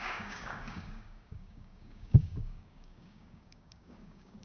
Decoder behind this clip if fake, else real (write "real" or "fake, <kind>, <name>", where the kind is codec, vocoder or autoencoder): fake, codec, DAC